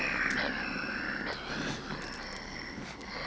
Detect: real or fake real